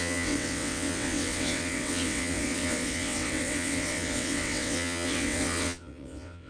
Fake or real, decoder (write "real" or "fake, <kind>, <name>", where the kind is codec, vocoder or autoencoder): fake, vocoder, WaveNeXt